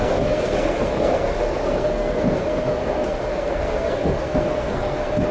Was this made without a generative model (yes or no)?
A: no